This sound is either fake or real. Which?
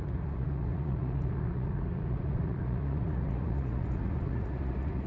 fake